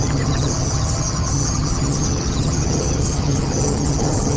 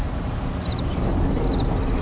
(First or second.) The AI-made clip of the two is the first